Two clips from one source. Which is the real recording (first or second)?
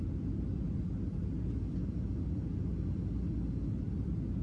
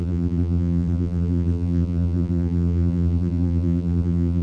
first